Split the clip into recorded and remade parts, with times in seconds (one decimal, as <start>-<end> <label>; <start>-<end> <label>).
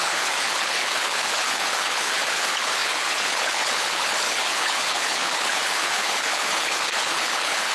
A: 0.0-7.7 remade